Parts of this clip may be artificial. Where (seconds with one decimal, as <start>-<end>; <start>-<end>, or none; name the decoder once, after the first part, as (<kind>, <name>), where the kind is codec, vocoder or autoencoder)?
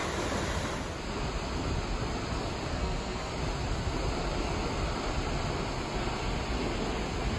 2.7-3.3 (codec, SNAC)